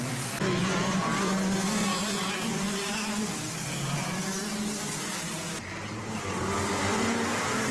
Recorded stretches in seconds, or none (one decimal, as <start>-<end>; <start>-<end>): 0.0-0.6; 1.1-1.9; 2.6-7.7